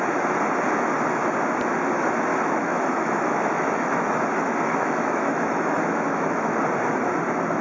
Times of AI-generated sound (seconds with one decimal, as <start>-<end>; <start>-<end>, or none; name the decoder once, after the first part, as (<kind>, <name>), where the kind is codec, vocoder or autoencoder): 2.3-6.6 (autoencoder, DAC-VAE)